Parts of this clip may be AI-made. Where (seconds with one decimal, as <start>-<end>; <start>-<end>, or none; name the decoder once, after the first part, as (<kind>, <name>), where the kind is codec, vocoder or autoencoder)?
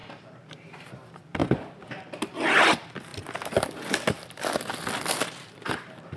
0.0-0.9 (vocoder, BigVGAN v2); 1.4-2.0